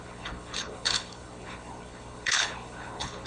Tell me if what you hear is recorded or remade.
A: remade